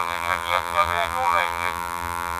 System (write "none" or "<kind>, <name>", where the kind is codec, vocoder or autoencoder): vocoder, BigVGAN v2